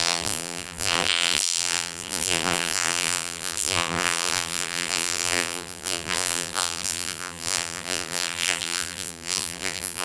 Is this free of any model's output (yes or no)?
no